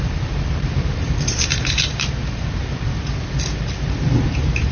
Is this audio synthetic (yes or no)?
yes